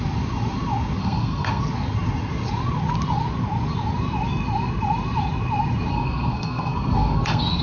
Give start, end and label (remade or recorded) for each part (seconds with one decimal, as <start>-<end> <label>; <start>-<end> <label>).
0.0-1.0 recorded; 1.0-1.6 remade; 1.6-5.9 recorded; 5.9-7.6 remade